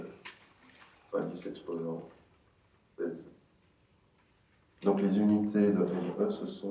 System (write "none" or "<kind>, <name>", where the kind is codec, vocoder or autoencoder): none